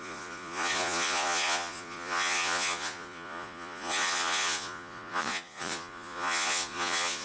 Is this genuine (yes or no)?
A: no